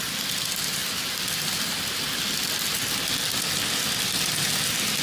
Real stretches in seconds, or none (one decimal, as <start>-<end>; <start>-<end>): 0.0-5.0